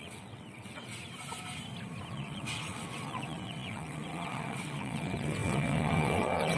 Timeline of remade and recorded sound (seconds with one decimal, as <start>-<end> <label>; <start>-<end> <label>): 0.0-0.9 remade; 0.9-2.1 recorded; 2.1-6.6 remade